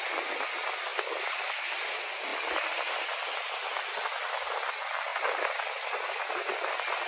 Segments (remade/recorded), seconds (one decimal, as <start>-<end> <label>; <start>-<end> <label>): 0.0-0.9 recorded; 0.9-1.9 remade; 1.9-2.3 recorded; 2.3-3.0 remade; 3.0-5.1 recorded; 5.1-5.9 remade; 5.9-7.1 recorded